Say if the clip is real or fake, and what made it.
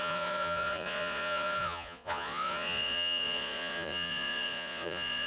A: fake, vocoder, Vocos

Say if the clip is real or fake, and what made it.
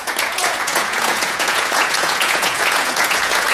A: fake, vocoder, Vocos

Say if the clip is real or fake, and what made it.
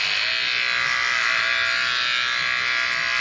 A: real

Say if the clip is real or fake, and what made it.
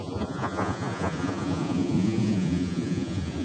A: fake, vocoder, Vocos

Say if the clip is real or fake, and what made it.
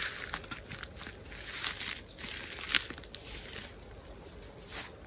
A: real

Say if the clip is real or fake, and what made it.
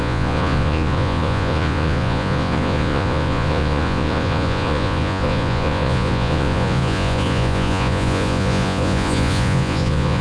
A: fake, vocoder, Vocos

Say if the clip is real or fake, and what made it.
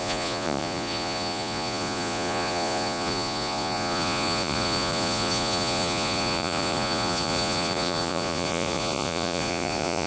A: fake, vocoder, Vocos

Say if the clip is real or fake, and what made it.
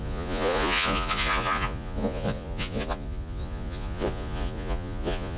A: fake, vocoder, Vocos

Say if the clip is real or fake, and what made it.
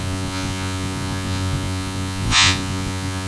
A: fake, vocoder, Vocos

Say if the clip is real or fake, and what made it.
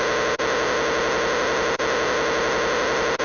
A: real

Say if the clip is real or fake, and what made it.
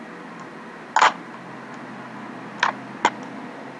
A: real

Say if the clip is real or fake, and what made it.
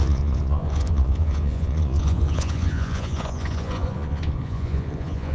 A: fake, vocoder, Vocos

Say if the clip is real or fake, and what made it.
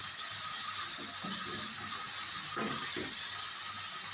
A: real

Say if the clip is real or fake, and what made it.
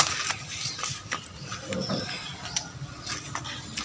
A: real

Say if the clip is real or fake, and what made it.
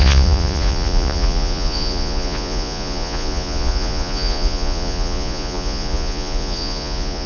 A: fake, vocoder, Vocos